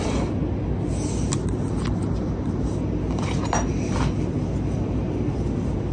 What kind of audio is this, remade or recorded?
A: recorded